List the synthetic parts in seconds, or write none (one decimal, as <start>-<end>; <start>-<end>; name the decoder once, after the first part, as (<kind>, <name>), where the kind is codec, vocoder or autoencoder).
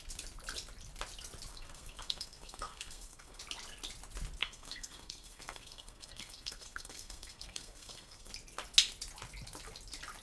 1.5-3.4 (codec, SNAC); 4.4-8.3